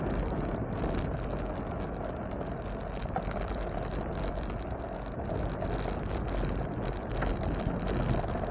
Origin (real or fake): real